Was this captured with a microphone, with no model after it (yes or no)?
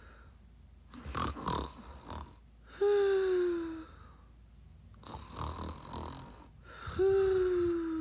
yes